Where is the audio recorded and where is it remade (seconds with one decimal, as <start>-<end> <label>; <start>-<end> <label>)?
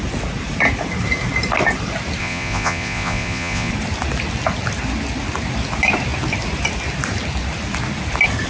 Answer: 0.0-2.2 recorded; 2.2-3.7 remade; 3.7-8.5 recorded